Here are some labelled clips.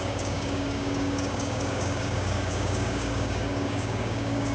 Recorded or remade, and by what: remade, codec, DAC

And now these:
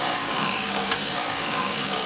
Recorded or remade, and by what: remade, codec, DAC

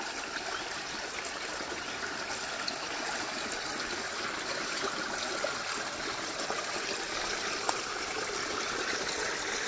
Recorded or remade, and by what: recorded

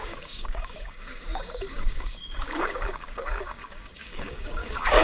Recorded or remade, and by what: remade, codec, DAC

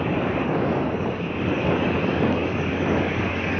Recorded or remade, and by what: remade, codec, DAC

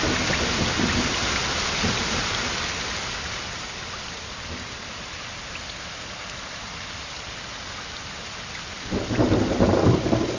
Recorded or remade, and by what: recorded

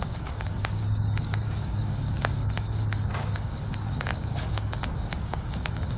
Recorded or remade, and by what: remade, codec, DAC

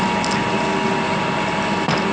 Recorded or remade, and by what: recorded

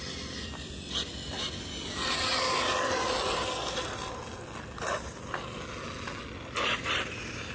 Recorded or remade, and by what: recorded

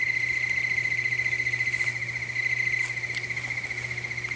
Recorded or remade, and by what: recorded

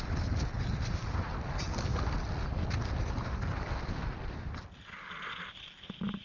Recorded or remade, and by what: recorded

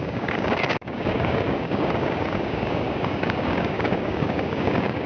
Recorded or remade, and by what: remade, codec, DAC